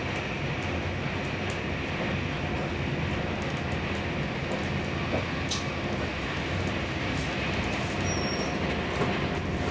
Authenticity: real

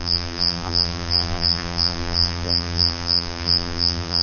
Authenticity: fake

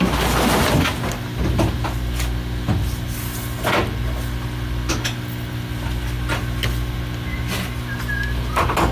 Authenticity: real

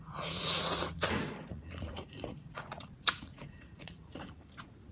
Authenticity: fake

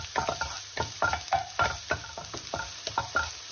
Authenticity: real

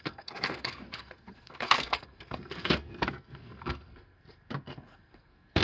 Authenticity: fake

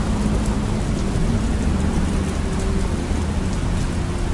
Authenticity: real